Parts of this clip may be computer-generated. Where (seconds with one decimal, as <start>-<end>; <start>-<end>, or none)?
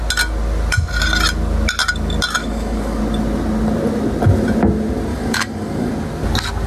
2.4-3.0; 5.1-5.9